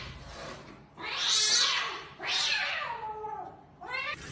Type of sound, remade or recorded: remade